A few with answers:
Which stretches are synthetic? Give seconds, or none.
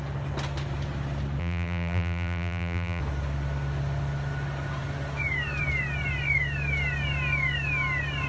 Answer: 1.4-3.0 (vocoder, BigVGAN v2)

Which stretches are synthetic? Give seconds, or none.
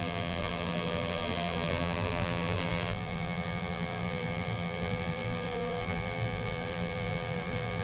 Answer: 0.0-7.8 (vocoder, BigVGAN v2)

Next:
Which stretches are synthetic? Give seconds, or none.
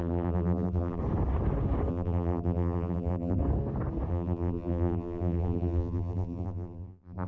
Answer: 0.0-1.0 (vocoder, BigVGAN v2); 1.9-3.4; 4.1-7.3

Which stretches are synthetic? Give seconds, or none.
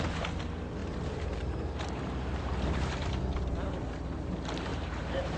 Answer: 0.8-3.2 (vocoder, BigVGAN v2); 4.7-5.4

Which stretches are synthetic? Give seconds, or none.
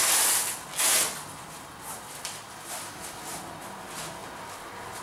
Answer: none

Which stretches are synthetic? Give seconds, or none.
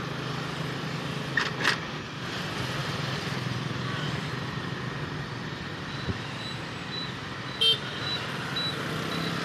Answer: 2.8-3.8 (vocoder, BigVGAN v2)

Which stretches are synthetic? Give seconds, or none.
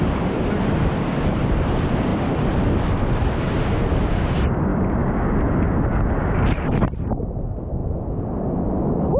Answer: 4.7-5.4 (vocoder, BigVGAN v2); 7.8-8.4